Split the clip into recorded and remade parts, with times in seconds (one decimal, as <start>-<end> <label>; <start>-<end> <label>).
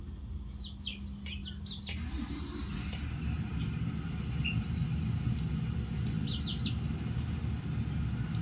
0.0-8.4 recorded